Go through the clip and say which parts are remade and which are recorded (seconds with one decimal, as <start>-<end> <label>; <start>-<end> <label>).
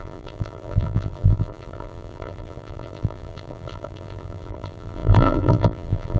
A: 0.0-6.2 remade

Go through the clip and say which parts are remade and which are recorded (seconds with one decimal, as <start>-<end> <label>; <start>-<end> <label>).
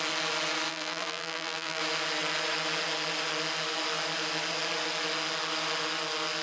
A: 0.0-0.7 recorded; 0.7-1.8 remade; 1.8-6.4 recorded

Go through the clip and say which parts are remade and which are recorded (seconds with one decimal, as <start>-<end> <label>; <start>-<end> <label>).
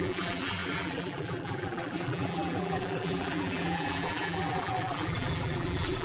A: 0.0-6.0 remade